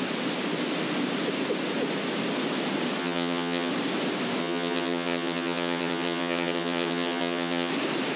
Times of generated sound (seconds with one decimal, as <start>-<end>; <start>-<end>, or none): 3.0-3.7; 4.4-7.7